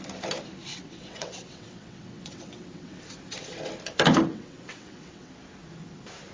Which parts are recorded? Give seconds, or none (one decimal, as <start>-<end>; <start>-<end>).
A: 0.0-0.7; 3.1-4.3; 5.3-6.3